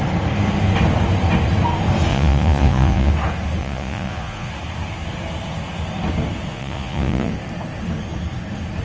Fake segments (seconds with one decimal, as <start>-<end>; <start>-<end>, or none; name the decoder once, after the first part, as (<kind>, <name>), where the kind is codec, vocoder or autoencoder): 2.1-3.1 (vocoder, Vocos); 3.6-4.5; 6.5-7.3